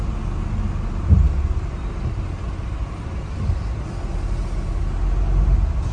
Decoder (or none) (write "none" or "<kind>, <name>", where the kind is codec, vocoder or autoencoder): none